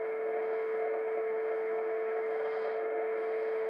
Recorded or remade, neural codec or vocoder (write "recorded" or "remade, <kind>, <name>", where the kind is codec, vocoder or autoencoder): remade, autoencoder, DAC-VAE